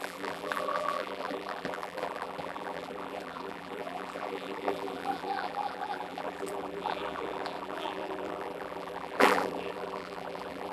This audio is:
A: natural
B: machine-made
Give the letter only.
B